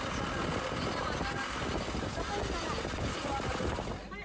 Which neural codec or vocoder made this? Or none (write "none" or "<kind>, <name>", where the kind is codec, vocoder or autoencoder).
none